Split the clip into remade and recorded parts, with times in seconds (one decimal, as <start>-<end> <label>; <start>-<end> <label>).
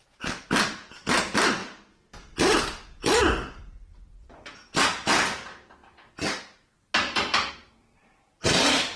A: 0.0-1.6 remade; 1.6-4.8 recorded; 4.8-5.8 remade; 5.8-7.5 recorded; 7.5-9.0 remade